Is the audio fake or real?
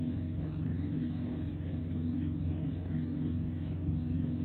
fake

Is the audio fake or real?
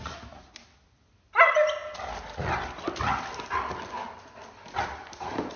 real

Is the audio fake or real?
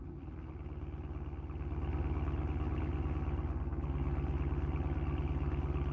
real